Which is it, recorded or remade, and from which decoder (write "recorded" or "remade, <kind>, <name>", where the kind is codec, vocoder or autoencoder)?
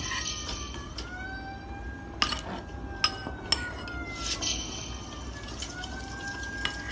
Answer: recorded